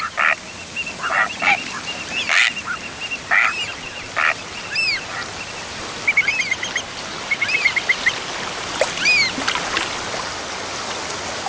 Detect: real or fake real